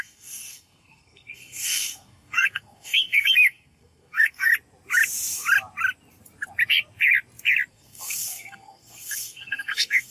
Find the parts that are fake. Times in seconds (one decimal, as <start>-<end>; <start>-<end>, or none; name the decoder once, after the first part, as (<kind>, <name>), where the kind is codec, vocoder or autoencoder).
0.0-4.5 (codec, SNAC); 7.7-10.1